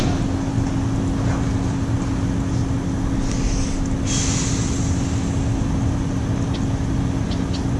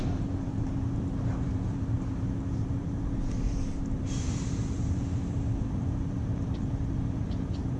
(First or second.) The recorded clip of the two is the first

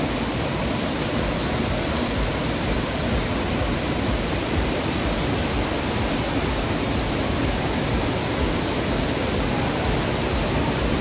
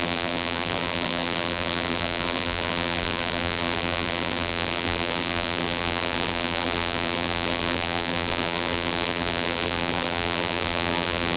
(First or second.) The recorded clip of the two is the first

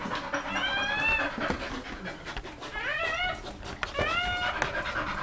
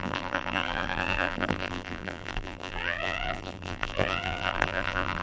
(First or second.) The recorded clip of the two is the first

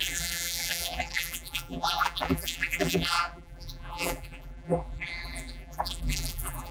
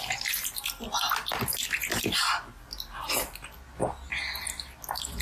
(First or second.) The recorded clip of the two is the second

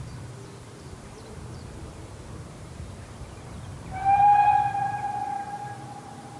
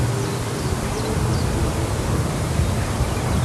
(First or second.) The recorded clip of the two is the second